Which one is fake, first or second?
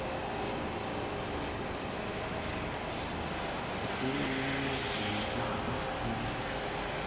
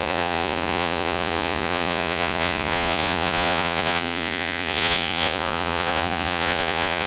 second